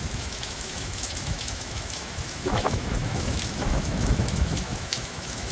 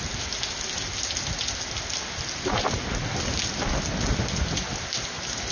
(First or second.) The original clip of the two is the second